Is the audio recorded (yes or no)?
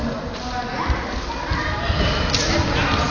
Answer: yes